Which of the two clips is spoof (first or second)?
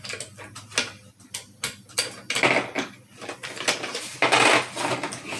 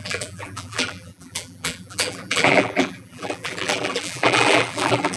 second